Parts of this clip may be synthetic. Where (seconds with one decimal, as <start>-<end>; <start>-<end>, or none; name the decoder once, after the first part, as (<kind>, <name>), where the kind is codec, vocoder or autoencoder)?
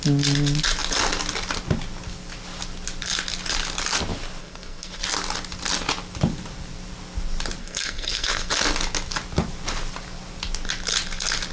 4.4-5.0 (codec, SNAC); 7.6-8.5